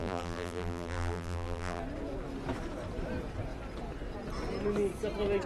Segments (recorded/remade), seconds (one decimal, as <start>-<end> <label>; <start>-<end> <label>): 0.0-1.8 remade; 1.8-5.5 recorded